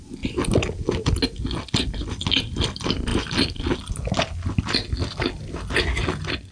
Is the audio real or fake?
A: real